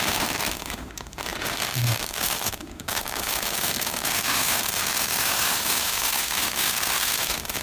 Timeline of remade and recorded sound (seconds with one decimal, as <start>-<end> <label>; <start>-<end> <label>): 0.0-7.6 remade